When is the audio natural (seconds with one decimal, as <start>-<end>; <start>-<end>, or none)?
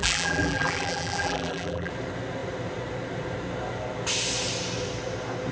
1.9-5.5